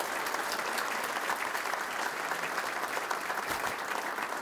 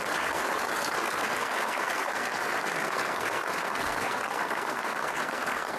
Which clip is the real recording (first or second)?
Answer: first